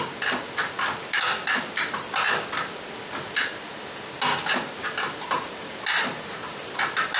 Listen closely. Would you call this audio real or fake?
real